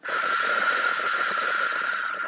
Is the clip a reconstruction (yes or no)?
yes